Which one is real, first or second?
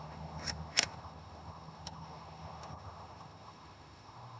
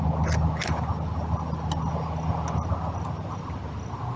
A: second